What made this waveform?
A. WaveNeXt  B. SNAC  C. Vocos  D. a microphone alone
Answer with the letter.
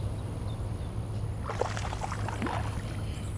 D